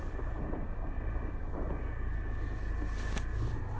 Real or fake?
real